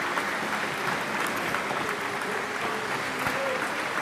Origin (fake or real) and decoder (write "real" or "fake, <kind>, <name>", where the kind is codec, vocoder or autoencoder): real